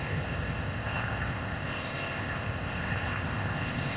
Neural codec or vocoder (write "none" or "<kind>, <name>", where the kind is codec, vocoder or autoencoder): codec, ZipCodec